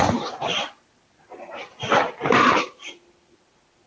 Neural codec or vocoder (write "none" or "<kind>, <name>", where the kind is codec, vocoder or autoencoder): vocoder, BigVGAN v2